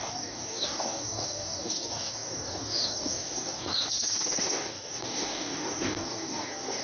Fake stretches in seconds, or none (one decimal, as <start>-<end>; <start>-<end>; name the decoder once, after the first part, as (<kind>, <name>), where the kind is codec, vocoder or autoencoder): 0.0-6.8 (codec, DAC)